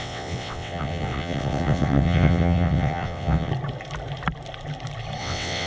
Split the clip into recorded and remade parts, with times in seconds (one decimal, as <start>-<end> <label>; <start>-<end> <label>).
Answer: 0.0-3.5 remade; 3.5-5.2 recorded; 5.2-5.7 remade